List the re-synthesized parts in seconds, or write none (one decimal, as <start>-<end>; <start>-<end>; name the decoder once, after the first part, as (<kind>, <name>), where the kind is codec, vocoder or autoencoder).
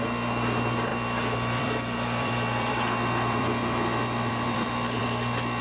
0.0-5.0 (vocoder, BigVGAN v2)